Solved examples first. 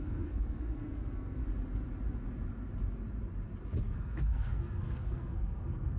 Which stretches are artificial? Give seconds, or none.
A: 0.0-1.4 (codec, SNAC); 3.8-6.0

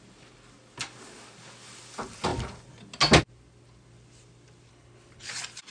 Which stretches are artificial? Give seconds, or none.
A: 4.7-5.3 (codec, HILCodec)

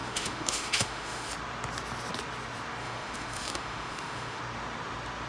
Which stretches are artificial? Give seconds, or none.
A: 0.0-1.3 (autoencoder, DAC-VAE); 2.8-4.4

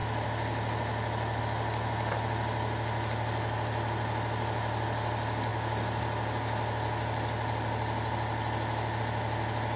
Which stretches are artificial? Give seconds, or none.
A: none

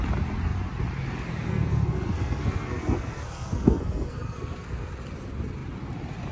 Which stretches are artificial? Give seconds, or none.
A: 1.5-4.9 (codec, SNAC)

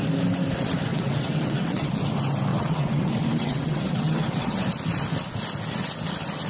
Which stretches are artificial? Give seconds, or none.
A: 0.9-1.9 (vocoder, WaveNeXt); 2.5-4.5